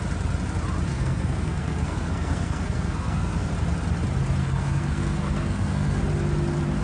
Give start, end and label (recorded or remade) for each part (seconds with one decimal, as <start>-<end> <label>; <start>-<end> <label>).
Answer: 0.0-0.9 recorded; 0.9-3.5 remade; 3.5-4.4 recorded; 4.4-6.0 remade; 6.0-6.8 recorded